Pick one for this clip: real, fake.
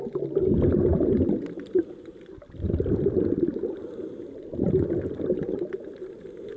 real